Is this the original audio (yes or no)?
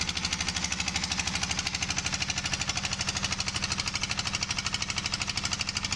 yes